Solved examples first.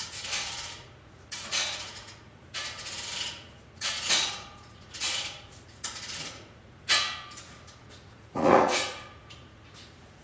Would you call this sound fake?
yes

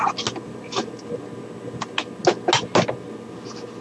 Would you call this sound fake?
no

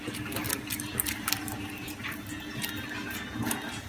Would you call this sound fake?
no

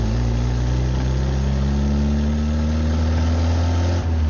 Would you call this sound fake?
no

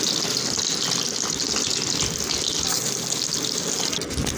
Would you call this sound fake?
no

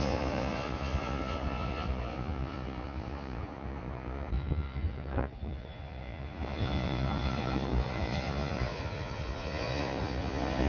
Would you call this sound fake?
yes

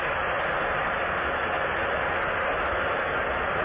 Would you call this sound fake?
no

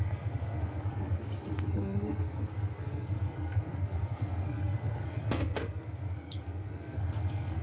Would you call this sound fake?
yes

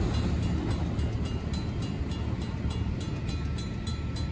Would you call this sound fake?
no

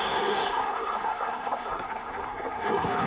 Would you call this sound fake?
yes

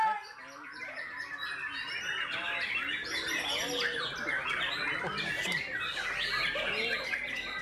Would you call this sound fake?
no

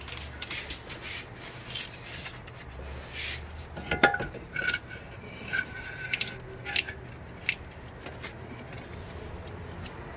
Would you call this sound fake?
no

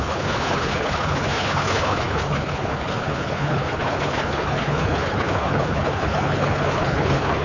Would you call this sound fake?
yes